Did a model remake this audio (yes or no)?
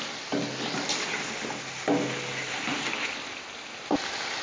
no